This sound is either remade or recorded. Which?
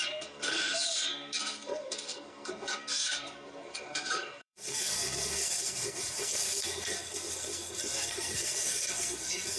remade